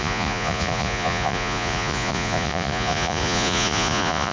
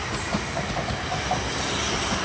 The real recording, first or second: second